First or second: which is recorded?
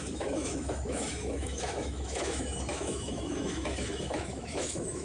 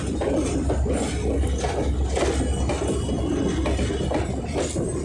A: second